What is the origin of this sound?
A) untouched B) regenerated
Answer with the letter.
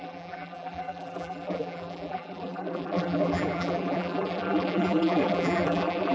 B